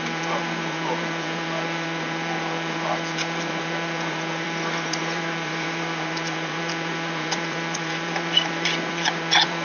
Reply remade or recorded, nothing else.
remade